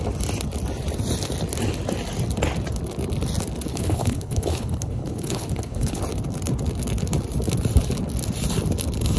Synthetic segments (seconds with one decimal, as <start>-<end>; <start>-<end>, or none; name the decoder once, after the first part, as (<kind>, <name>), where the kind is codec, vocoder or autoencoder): 3.7-6.0 (codec, HILCodec)